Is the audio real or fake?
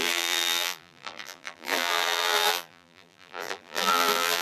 fake